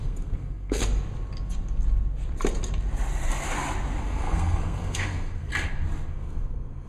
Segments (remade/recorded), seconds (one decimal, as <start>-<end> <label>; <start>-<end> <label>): 0.0-0.8 remade; 0.8-4.0 recorded; 4.0-5.5 remade; 5.5-6.1 recorded; 6.1-6.9 remade